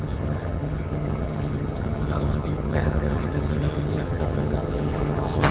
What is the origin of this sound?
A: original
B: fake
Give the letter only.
B